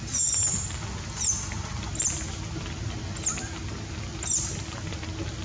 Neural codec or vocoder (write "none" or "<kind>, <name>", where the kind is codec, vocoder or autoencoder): none